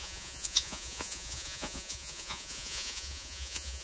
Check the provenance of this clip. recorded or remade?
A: remade